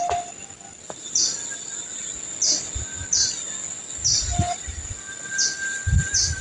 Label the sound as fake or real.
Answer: real